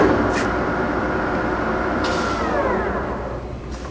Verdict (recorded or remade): recorded